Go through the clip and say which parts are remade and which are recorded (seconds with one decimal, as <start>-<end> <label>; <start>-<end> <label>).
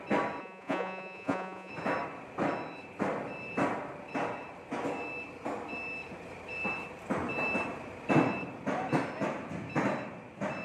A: 0.0-0.4 recorded; 0.4-1.7 remade; 1.7-10.6 recorded